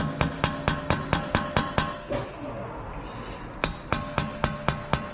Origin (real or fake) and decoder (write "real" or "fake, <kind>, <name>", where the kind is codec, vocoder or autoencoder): real